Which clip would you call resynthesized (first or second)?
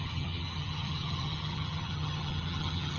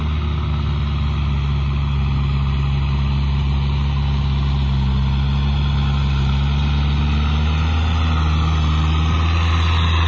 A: first